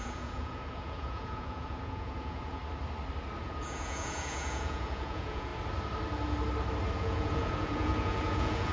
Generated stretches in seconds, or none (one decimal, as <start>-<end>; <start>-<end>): 0.0-2.6; 3.4-5.5; 6.9-8.7